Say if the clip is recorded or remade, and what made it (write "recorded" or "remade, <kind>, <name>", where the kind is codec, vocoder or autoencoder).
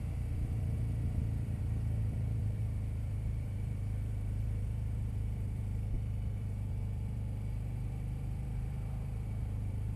remade, vocoder, BigVGAN v2